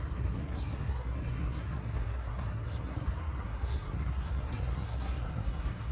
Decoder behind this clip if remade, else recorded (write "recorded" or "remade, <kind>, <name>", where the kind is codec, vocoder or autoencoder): remade, codec, SNAC